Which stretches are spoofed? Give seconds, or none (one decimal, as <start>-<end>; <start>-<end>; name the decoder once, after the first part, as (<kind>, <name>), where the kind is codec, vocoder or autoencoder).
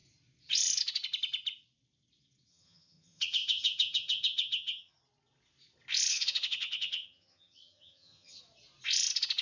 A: 2.5-4.9 (vocoder, HiFi-GAN); 6.1-8.4